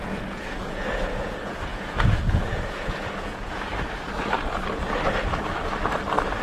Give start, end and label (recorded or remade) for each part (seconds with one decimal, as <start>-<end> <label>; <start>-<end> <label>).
0.0-3.7 remade; 3.7-6.4 recorded